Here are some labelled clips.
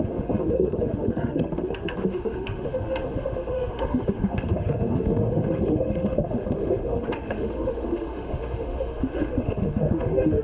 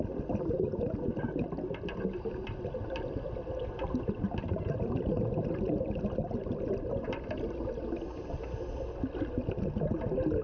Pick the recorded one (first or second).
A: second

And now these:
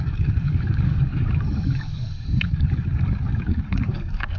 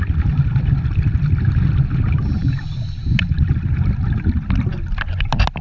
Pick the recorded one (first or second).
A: second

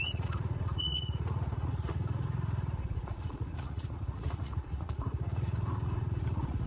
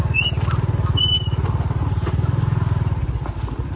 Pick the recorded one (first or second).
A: second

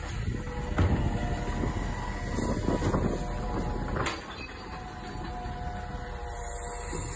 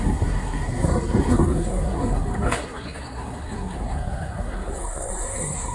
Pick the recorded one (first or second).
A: first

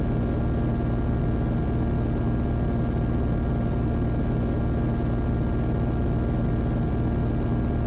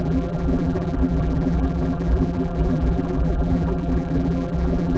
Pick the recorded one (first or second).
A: first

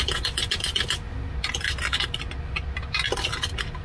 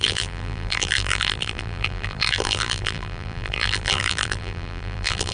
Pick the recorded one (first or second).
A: first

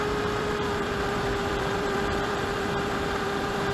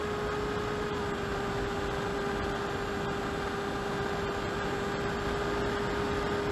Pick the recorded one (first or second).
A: second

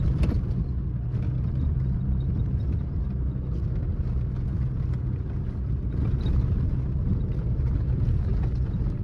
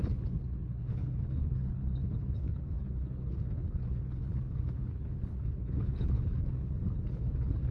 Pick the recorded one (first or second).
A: first